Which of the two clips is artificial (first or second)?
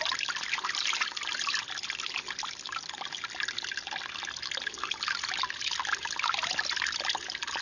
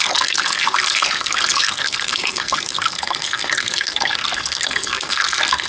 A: second